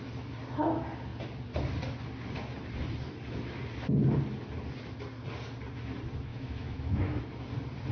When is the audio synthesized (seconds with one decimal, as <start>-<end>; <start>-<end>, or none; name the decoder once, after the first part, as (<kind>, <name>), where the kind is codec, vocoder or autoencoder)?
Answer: 6.3-7.2 (autoencoder, DAC-VAE)